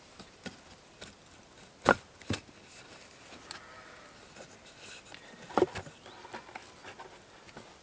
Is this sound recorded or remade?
recorded